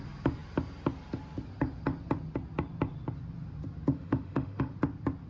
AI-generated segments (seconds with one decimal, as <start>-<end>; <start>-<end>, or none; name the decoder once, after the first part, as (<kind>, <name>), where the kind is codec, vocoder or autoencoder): 3.9-4.7 (autoencoder, DAC-VAE)